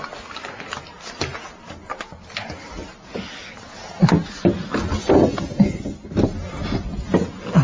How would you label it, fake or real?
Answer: real